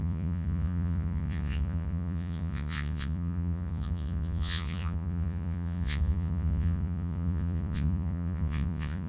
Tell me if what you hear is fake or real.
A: fake